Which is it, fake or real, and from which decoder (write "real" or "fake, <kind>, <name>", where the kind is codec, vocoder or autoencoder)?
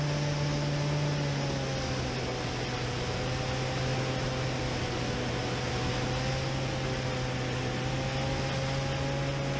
real